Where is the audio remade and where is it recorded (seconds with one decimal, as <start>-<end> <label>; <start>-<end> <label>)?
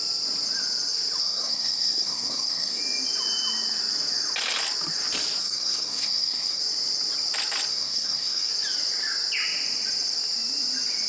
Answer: 0.0-1.2 recorded; 1.2-2.8 remade; 2.8-5.4 recorded; 5.4-6.6 remade; 6.6-7.7 recorded; 7.7-8.5 remade; 8.5-11.1 recorded